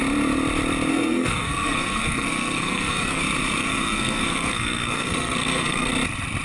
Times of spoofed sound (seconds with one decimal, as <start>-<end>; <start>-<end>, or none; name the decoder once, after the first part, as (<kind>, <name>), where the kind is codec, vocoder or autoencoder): 0.9-3.2 (codec, SNAC); 3.6-5.9